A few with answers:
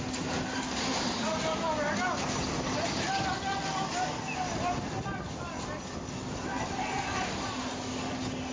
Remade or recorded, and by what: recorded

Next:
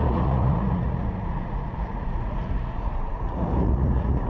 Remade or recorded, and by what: remade, vocoder, Vocos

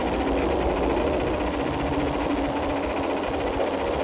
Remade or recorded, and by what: recorded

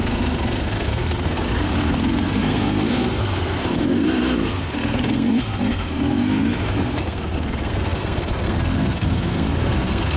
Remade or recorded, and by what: remade, codec, SNAC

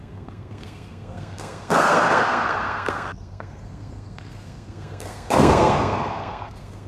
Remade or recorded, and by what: remade, codec, SNAC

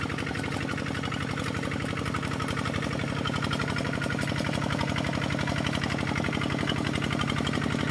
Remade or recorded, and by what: recorded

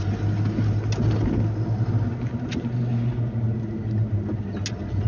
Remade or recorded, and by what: recorded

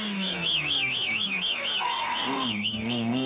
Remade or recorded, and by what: remade, codec, DAC